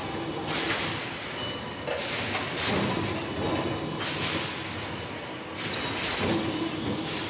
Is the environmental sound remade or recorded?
recorded